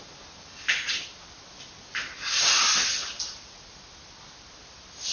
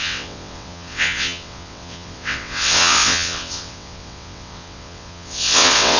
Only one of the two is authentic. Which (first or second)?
first